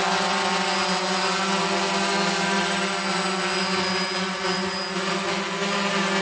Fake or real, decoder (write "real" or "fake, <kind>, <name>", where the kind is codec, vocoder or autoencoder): real